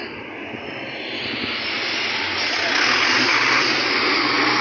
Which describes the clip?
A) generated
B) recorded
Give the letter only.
B